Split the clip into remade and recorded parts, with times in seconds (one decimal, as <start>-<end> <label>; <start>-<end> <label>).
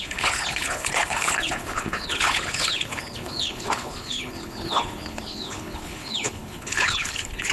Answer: 0.0-7.5 remade